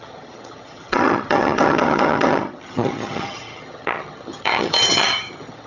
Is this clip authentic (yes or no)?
no